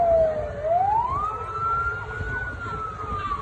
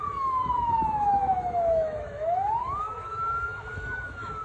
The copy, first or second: second